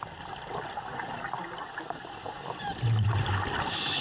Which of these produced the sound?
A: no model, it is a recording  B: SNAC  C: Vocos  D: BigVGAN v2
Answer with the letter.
A